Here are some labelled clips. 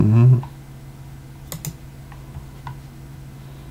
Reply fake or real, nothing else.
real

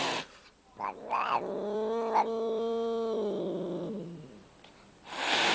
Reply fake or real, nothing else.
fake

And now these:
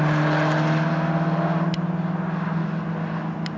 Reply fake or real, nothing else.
real